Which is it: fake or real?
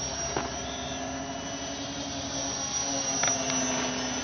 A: real